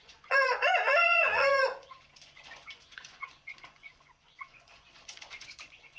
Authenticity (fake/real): fake